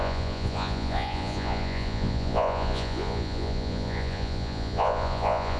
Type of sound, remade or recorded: remade